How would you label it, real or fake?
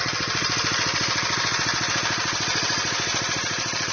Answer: real